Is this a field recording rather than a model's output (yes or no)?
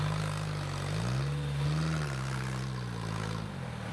yes